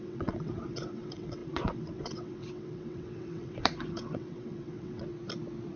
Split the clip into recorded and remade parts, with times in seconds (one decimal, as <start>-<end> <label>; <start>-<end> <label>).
0.0-5.1 remade; 5.1-5.8 recorded